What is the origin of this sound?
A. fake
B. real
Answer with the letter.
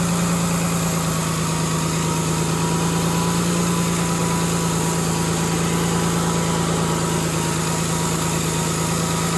B